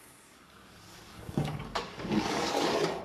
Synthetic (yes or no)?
yes